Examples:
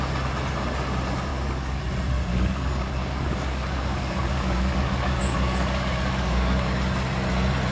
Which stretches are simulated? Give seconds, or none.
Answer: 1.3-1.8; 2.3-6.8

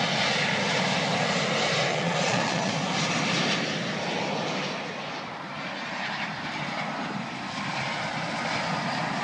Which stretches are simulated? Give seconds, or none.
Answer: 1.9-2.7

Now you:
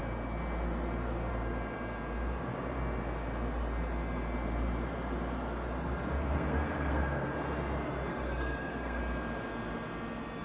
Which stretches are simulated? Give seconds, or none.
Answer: 6.2-7.3; 8.1-9.0

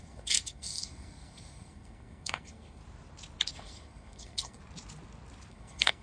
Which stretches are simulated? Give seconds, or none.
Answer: 0.0-2.8; 3.5-4.6; 5.5-6.0